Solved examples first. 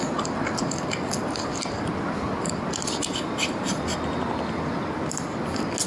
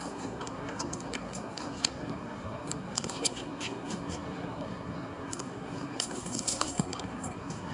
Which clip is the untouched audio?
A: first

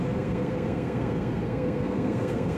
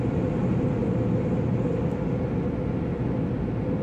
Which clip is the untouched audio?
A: second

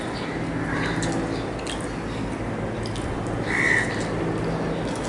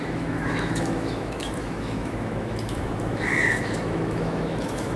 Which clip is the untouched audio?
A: first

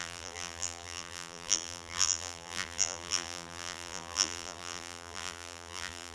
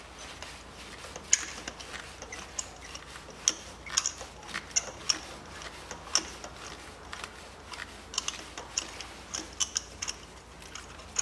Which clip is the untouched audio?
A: second